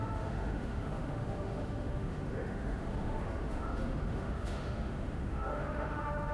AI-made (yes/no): yes